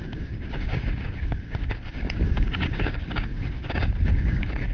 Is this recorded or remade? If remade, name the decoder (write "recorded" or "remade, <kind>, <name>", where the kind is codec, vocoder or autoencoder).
remade, codec, DAC